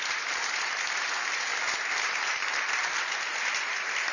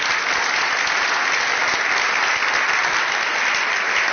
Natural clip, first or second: second